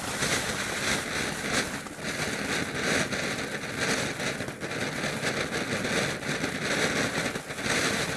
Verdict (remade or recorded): recorded